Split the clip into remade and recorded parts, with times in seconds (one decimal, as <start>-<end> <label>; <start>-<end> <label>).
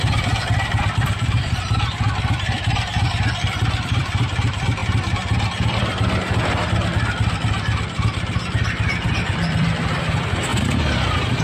0.0-10.5 remade; 10.5-11.4 recorded